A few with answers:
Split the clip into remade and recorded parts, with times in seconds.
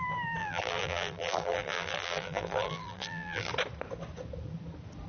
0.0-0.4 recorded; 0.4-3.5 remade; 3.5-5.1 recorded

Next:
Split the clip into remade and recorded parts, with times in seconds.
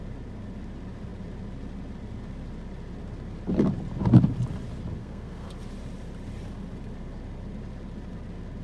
0.0-5.0 recorded; 5.0-5.5 remade; 5.5-8.6 recorded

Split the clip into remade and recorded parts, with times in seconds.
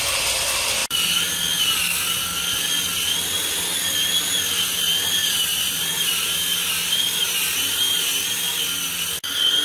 0.0-5.2 recorded; 5.2-8.0 remade; 8.0-9.6 recorded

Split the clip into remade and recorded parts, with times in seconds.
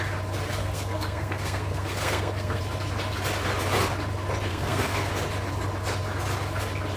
0.0-0.6 recorded; 0.6-2.6 remade; 2.6-4.5 recorded; 4.5-5.1 remade; 5.1-7.0 recorded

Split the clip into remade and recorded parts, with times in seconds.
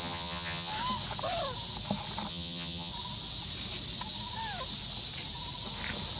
0.0-0.7 remade; 0.7-2.3 recorded; 2.3-2.9 remade; 2.9-6.2 recorded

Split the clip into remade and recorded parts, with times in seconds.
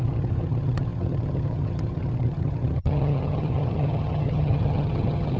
0.0-5.4 remade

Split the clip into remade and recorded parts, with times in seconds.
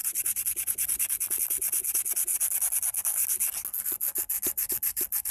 0.0-5.3 recorded